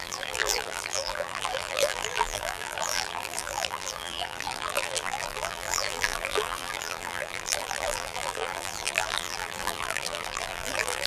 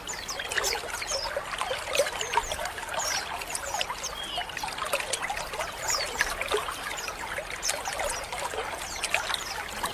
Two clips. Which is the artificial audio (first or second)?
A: first